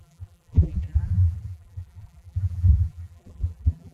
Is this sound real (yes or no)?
no